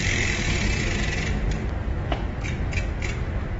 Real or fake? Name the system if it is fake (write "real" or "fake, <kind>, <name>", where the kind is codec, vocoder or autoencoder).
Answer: real